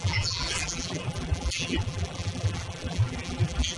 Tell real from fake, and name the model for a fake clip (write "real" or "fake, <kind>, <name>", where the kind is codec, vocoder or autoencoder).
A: fake, vocoder, BigVGAN v2